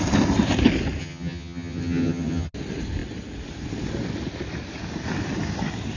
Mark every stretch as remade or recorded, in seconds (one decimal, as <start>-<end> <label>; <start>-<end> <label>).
0.0-1.0 recorded; 1.0-2.5 remade; 2.5-6.0 recorded